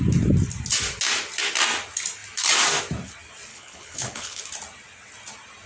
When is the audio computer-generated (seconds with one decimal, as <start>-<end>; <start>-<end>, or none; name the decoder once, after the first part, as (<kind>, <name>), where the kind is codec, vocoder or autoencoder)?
3.5-4.4 (codec, HILCodec)